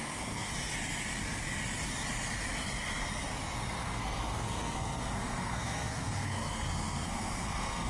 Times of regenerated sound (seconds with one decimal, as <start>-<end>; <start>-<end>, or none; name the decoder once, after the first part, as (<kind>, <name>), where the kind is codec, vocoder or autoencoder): 0.0-0.5 (codec, SNAC); 3.8-7.9